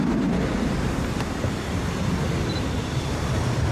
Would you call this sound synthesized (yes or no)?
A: yes